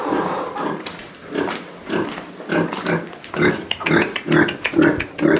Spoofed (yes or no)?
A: no